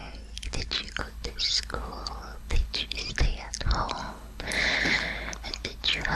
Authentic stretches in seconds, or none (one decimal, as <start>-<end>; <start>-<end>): 0.0-1.0; 3.0-4.0